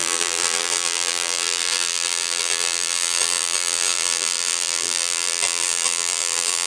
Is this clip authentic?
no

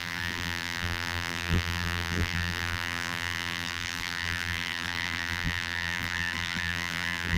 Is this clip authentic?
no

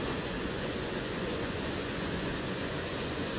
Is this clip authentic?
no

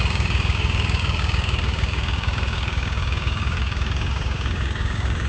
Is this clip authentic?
no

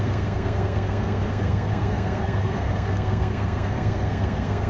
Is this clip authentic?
no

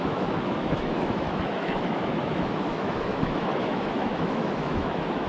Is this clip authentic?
no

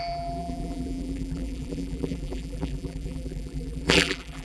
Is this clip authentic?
no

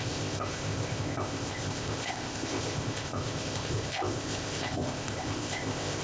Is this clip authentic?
no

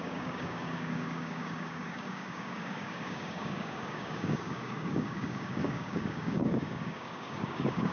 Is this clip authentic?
no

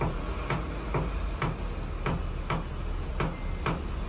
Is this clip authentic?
yes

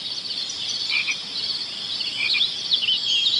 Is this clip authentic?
yes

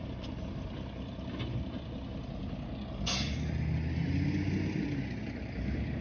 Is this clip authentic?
yes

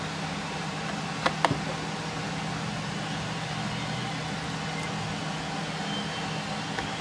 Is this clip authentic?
yes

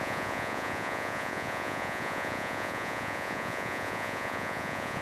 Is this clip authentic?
no